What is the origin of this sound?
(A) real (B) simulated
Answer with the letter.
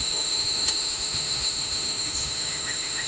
B